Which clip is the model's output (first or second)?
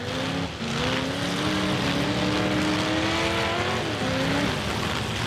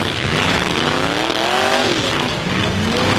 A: second